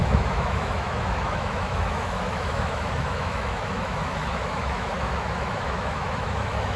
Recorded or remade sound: remade